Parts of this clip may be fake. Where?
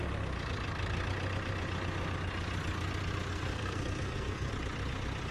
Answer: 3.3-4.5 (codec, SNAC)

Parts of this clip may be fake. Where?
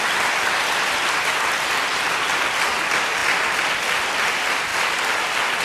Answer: none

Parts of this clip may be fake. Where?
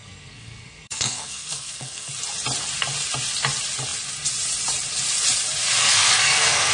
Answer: 0.0-2.1 (codec, SNAC); 5.8-6.7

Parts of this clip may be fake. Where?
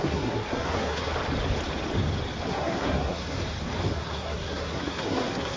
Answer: 0.0-1.1 (codec, SNAC); 2.5-3.4; 3.9-5.6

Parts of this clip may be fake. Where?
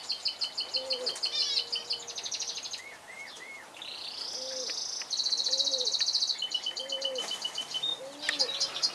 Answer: none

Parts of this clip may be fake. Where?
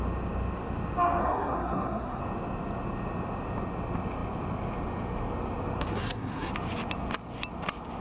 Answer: 1.2-2.2 (codec, SNAC); 5.9-6.5